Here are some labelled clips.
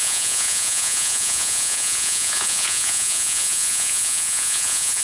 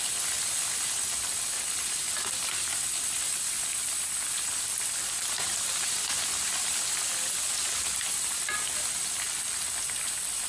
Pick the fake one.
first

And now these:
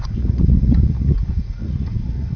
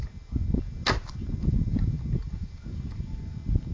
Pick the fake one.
first